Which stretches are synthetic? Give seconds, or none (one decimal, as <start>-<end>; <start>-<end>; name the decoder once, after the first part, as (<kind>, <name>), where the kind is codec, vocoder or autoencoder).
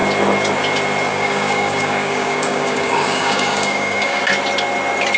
1.1-4.2 (codec, DAC)